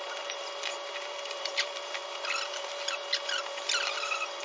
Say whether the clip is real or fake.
fake